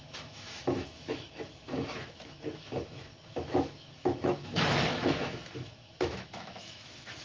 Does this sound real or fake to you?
fake